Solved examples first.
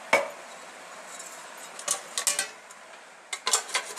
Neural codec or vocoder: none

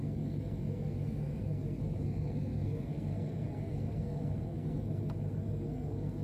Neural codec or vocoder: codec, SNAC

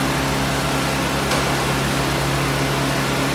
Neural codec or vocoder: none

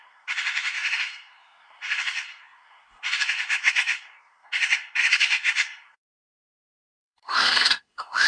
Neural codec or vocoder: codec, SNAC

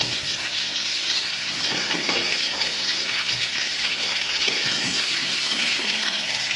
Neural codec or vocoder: codec, SNAC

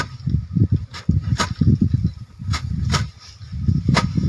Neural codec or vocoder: none